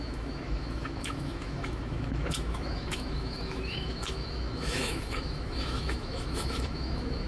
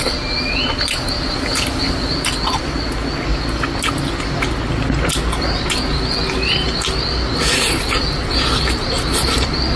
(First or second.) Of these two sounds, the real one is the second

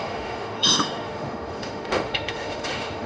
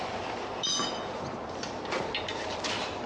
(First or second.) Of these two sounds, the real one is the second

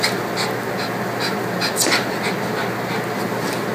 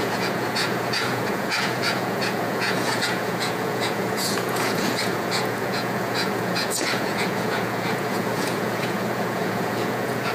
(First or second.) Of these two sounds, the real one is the first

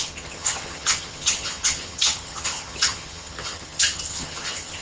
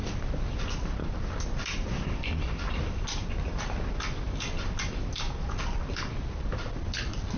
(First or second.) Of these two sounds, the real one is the second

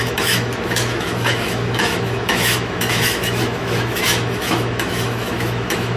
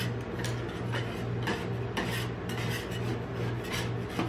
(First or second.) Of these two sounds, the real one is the second